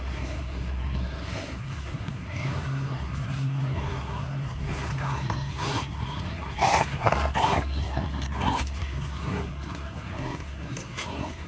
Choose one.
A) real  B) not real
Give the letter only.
B